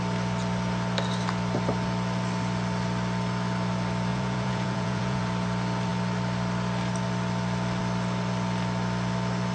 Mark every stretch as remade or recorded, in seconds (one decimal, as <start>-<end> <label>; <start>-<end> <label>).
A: 0.0-4.1 recorded; 4.1-5.2 remade; 5.2-9.5 recorded